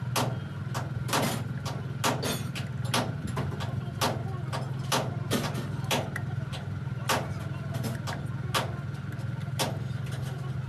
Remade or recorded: recorded